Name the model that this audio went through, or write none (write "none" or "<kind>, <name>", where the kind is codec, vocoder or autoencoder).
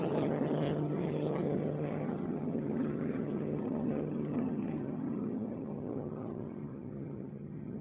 vocoder, HiFi-GAN